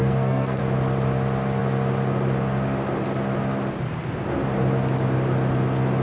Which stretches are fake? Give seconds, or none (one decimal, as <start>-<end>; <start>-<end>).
0.0-0.6